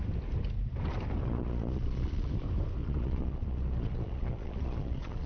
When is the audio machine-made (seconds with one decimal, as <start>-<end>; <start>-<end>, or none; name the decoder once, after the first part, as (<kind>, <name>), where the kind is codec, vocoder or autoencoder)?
1.2-2.3 (vocoder, Vocos); 2.8-5.3